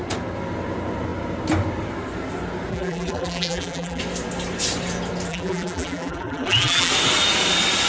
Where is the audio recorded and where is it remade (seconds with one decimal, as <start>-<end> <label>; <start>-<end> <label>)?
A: 0.0-2.7 recorded; 2.7-4.0 remade; 4.0-5.3 recorded; 5.3-6.9 remade; 6.9-7.9 recorded